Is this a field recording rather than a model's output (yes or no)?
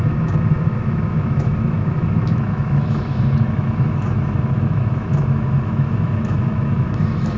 no